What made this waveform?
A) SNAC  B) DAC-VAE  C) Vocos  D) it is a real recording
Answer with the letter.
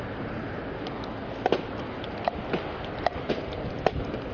D